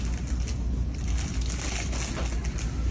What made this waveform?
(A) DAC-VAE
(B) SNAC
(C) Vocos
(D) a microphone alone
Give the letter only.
D